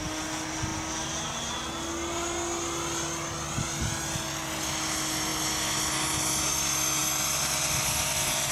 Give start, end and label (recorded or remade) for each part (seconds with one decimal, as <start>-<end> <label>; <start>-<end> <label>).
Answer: 0.0-8.5 recorded